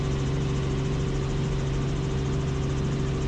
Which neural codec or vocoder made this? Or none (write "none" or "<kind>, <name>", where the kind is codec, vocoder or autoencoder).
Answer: none